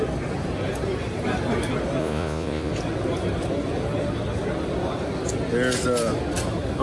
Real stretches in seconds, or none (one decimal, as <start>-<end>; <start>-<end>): 0.0-2.0; 2.7-6.8